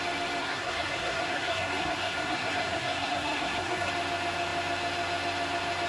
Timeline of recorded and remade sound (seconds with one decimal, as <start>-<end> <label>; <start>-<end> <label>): 0.0-0.4 recorded; 0.4-3.9 remade; 3.9-5.9 recorded

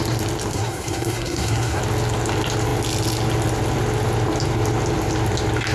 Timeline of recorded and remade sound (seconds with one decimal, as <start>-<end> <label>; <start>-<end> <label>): 0.0-0.5 recorded; 0.5-1.8 remade; 1.8-5.7 recorded

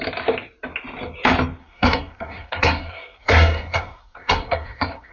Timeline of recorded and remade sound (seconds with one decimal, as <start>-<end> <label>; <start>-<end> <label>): 0.0-1.6 recorded; 1.6-5.1 remade

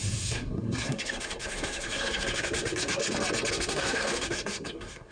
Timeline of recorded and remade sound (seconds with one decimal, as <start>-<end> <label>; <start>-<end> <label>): 0.0-3.0 remade; 3.0-3.5 recorded; 3.5-5.1 remade